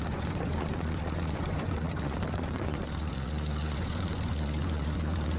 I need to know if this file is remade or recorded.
remade